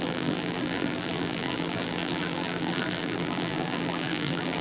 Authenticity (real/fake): fake